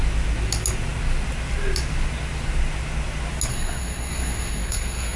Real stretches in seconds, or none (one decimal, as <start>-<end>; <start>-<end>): 0.0-3.5